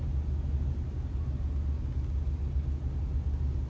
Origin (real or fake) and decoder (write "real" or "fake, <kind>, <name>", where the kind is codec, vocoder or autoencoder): real